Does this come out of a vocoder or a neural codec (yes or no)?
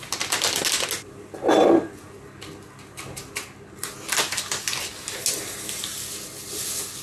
no